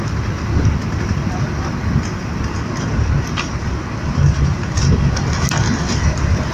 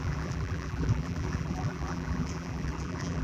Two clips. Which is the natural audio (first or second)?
first